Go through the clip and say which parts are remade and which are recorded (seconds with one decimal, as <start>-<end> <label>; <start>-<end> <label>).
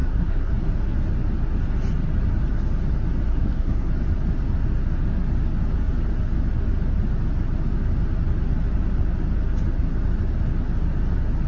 0.0-0.5 remade; 0.5-3.3 recorded; 3.3-3.9 remade; 3.9-11.5 recorded